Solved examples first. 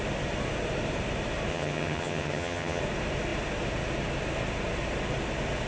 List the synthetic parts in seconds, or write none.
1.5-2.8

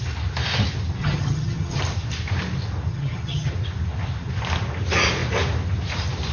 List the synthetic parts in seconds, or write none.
1.0-1.8; 2.9-3.5

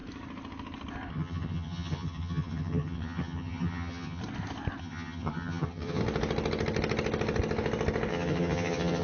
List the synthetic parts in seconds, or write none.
1.1-4.2; 4.8-6.0; 8.1-9.0

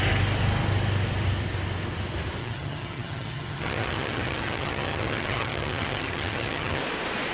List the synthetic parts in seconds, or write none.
2.4-6.8